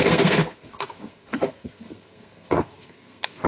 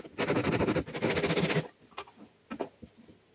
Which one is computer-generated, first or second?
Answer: first